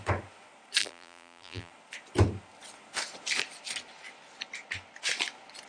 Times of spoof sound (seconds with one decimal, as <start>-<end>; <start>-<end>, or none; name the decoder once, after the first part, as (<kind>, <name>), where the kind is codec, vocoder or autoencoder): 0.8-1.7 (vocoder, BigVGAN v2)